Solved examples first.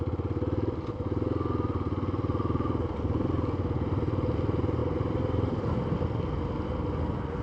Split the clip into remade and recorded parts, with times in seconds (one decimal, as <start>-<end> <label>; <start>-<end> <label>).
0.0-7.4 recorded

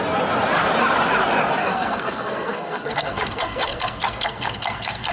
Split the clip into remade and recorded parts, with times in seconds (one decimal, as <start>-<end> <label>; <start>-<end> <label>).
0.0-1.6 recorded; 1.6-5.1 remade

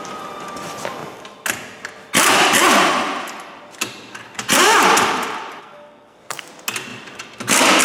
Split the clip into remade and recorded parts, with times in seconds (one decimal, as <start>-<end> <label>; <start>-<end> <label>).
0.0-5.6 recorded; 5.6-6.5 remade; 6.5-7.8 recorded